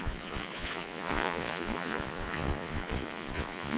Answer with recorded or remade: remade